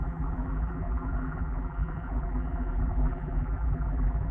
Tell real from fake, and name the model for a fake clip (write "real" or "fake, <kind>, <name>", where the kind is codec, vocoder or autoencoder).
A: fake, vocoder, BigVGAN v2